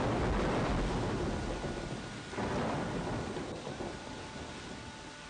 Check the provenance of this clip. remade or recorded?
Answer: recorded